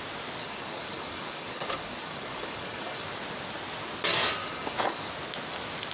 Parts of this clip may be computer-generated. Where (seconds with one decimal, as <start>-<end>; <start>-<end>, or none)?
0.4-3.1; 4.4-5.1